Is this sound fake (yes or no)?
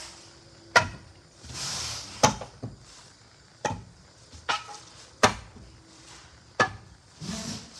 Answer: yes